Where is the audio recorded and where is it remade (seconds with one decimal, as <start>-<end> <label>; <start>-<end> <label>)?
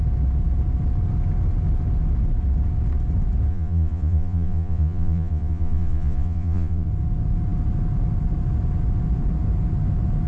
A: 0.0-3.5 recorded; 3.5-6.9 remade; 6.9-10.3 recorded